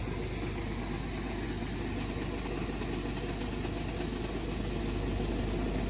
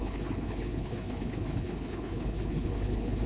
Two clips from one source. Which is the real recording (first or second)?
first